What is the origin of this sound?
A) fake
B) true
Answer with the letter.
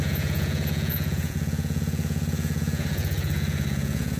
A